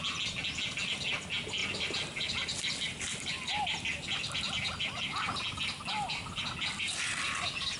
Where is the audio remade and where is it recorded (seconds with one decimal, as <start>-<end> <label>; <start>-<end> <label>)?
0.0-1.6 recorded; 1.6-4.9 remade; 4.9-7.8 recorded